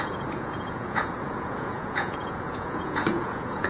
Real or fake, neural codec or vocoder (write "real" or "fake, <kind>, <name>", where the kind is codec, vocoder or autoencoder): fake, vocoder, Vocos